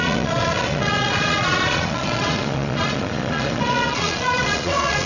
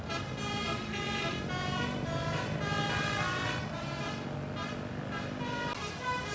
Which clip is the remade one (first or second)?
first